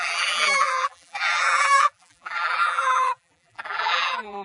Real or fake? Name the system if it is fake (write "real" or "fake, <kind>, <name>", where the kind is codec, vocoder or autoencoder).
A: fake, vocoder, BigVGAN v2